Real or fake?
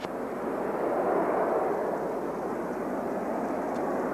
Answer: real